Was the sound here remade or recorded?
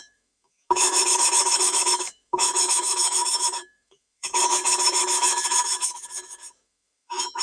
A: remade